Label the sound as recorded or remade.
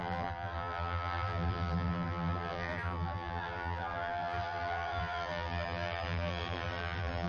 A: remade